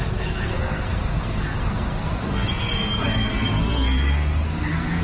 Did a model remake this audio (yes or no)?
yes